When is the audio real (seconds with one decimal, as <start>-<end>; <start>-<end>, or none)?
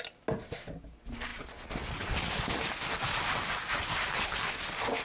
0.0-5.0